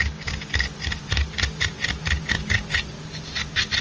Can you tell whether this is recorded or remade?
recorded